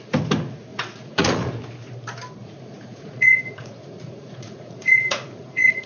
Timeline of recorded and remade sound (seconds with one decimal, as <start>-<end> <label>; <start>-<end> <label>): 0.0-0.7 recorded; 0.7-1.5 remade; 1.5-2.4 recorded; 2.4-5.9 remade